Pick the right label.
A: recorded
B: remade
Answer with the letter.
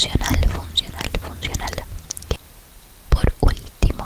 B